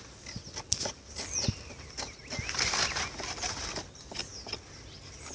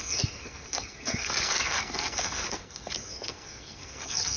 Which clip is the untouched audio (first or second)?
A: first